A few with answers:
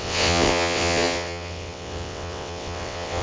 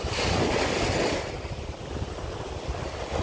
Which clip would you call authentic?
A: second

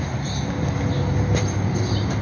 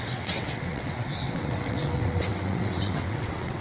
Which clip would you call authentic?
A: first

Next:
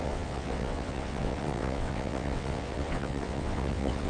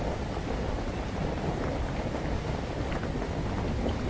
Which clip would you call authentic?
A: second